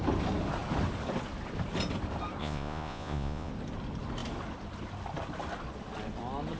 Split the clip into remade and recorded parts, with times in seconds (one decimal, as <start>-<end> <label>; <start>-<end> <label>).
0.0-2.4 recorded; 2.4-3.5 remade; 3.5-6.6 recorded